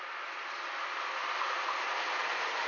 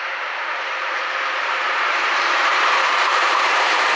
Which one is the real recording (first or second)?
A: first